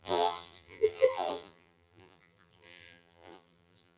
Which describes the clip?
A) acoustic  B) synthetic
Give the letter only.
B